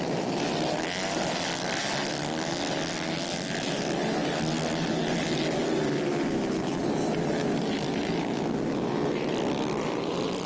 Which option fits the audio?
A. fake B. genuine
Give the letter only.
B